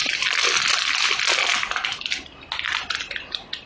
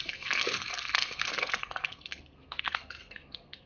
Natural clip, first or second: first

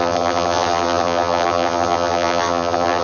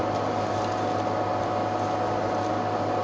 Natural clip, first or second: second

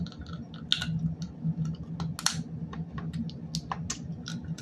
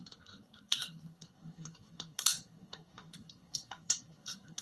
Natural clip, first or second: first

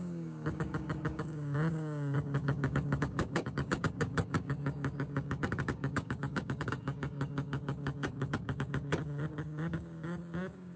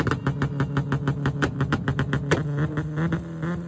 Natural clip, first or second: second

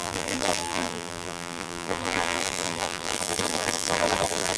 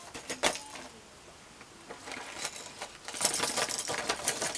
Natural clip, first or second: second